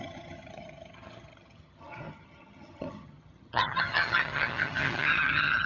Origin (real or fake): fake